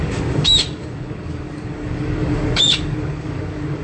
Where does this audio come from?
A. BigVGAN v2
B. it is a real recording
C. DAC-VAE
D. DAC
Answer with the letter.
D